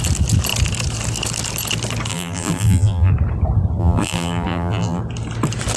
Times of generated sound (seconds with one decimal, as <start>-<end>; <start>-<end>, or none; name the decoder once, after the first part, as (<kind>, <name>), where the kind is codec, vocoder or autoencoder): 2.1-3.1 (vocoder, BigVGAN v2); 3.8-5.0

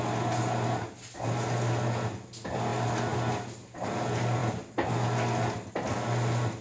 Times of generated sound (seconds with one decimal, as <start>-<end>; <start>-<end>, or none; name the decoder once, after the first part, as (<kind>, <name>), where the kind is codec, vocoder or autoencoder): none

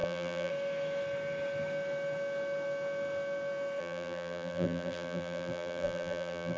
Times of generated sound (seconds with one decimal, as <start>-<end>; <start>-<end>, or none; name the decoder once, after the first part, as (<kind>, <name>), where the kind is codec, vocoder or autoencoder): 0.0-0.5 (vocoder, BigVGAN v2); 3.8-6.6

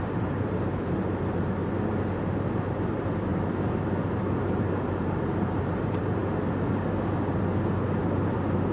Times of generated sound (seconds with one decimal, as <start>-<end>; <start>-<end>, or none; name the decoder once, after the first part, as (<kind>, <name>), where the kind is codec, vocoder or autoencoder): 0.0-1.6 (vocoder, BigVGAN v2); 2.3-3.3; 4.4-6.2

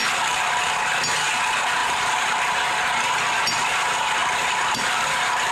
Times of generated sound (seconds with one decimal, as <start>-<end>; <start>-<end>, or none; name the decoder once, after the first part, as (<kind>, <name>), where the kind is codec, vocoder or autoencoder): 0.0-0.9 (vocoder, BigVGAN v2); 1.8-2.4; 4.2-5.5

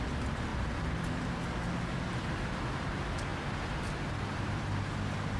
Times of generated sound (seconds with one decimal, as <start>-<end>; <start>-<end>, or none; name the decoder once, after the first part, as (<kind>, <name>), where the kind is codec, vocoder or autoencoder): 0.5-1.1 (vocoder, BigVGAN v2); 2.1-2.9; 3.3-4.8

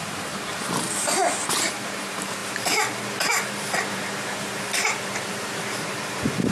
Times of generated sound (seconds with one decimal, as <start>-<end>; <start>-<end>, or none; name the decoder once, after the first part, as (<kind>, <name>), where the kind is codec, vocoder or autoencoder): 0.0-6.5 (vocoder, BigVGAN v2)

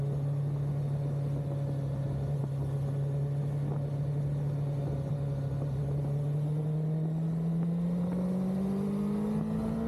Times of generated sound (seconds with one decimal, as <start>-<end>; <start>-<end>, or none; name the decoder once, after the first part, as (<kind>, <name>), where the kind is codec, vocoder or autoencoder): none